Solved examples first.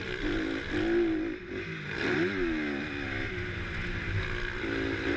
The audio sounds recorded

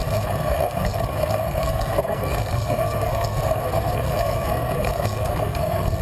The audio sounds remade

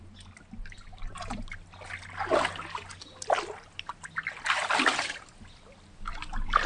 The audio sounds recorded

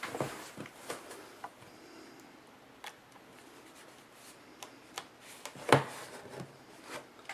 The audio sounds recorded